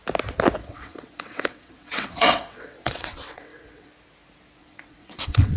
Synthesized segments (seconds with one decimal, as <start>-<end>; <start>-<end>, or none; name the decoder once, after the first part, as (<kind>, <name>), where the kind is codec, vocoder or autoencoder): 0.6-3.9 (vocoder, WaveNeXt); 4.6-5.6

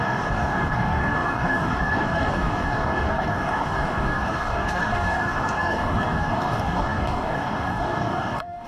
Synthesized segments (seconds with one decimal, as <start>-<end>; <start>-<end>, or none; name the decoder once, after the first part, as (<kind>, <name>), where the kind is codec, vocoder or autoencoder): 0.0-8.7 (codec, DAC)

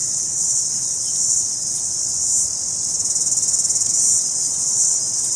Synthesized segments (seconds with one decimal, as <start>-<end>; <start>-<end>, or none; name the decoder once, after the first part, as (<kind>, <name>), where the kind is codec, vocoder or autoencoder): 0.0-2.0 (vocoder, WaveNeXt); 4.2-5.4

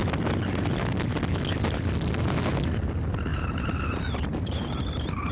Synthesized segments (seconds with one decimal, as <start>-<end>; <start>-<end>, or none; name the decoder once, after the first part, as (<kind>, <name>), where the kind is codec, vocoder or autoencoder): 3.3-5.3 (vocoder, BigVGAN v2)

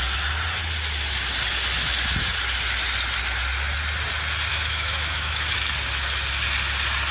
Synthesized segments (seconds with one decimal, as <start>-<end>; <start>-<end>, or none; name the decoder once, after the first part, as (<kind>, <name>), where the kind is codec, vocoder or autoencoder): 4.5-5.6 (autoencoder, DAC-VAE)

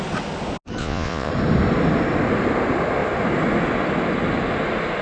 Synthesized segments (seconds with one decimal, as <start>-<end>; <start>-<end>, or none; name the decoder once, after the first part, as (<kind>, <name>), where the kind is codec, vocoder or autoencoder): 0.8-1.3 (vocoder, Vocos)